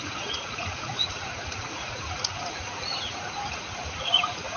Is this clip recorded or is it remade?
remade